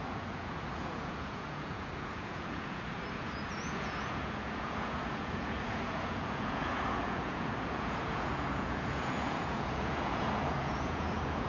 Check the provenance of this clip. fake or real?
fake